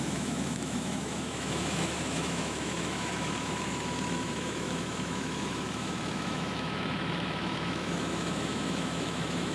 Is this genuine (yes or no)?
no